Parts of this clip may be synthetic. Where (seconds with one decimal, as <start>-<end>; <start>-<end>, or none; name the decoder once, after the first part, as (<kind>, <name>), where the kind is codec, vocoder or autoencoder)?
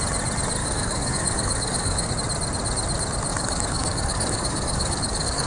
0.6-2.1 (codec, DAC); 3.3-5.5